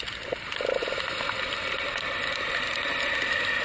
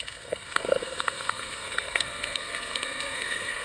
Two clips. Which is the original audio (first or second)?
first